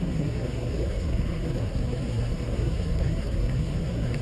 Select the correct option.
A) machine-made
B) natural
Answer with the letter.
A